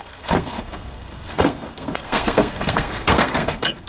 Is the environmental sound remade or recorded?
remade